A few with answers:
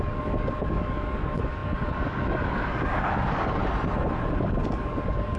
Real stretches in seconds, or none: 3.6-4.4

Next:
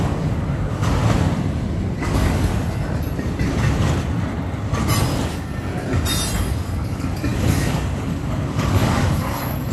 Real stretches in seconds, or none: 1.0-2.0; 2.5-6.5

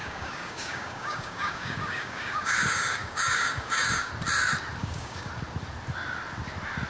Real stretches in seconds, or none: 4.1-4.8; 5.3-6.9

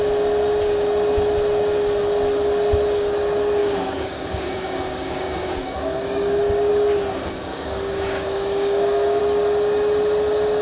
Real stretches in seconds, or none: 0.0-3.6; 6.7-7.5; 9.2-10.6

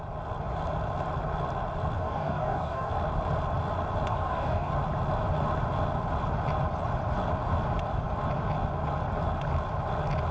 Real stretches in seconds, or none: 0.0-2.0; 2.9-4.1; 4.7-10.3